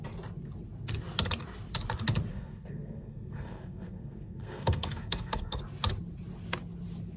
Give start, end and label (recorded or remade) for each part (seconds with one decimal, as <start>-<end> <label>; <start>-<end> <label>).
0.0-2.3 recorded; 2.3-5.6 remade; 5.6-7.2 recorded